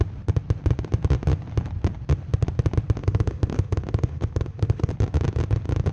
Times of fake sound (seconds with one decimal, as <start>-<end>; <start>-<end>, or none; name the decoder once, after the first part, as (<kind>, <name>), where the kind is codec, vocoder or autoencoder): 3.0-4.9 (autoencoder, DAC-VAE)

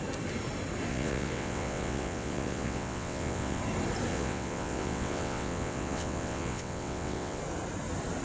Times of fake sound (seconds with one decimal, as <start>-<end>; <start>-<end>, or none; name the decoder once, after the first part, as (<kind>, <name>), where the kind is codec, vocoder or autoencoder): 0.9-3.6 (vocoder, WaveNeXt); 4.1-7.4

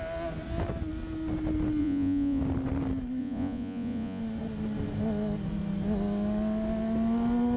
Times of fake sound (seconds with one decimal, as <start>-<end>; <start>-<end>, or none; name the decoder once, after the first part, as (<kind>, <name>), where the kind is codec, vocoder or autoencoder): 1.8-2.4 (vocoder, Vocos); 3.2-4.2

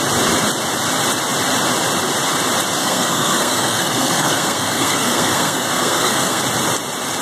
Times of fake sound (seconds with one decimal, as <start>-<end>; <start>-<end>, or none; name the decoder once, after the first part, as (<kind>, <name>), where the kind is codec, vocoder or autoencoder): 2.8-6.4 (codec, SNAC)

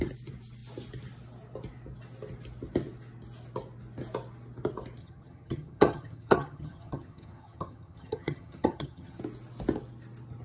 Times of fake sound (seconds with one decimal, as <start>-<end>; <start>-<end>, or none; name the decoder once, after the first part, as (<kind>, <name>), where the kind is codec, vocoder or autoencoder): 5.0-9.2 (vocoder, HiFi-GAN)

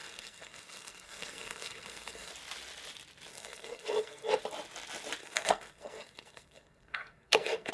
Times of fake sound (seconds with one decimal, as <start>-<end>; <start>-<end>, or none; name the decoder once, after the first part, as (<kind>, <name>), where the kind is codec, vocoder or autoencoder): 0.0-2.3 (codec, SNAC); 3.3-4.4; 5.2-7.7

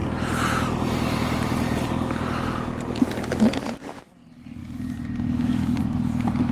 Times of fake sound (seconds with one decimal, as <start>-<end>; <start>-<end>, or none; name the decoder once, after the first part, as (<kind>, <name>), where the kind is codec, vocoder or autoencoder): 4.6-5.8 (codec, DAC)